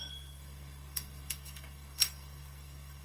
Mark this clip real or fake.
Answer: fake